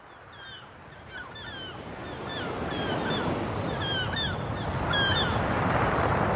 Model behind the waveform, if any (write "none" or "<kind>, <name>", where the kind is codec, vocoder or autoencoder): none